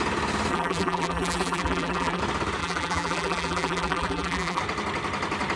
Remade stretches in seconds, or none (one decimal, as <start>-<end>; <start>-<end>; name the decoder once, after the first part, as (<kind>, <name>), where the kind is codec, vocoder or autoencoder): 0.5-2.2 (vocoder, BigVGAN v2); 2.6-4.6